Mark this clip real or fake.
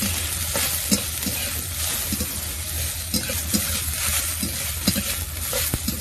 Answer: real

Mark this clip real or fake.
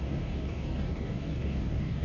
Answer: fake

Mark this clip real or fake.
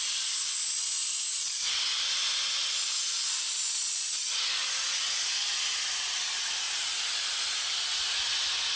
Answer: real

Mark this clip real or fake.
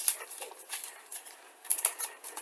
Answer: fake